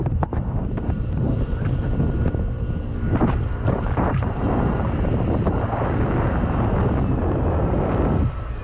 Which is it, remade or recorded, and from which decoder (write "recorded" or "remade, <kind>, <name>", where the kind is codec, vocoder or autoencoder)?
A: recorded